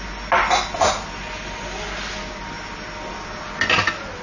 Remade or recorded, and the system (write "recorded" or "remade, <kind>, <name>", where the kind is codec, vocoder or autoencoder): recorded